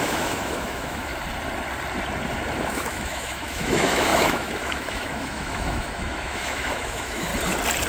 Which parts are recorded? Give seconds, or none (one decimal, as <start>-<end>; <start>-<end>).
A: 1.1-2.6; 7.3-7.9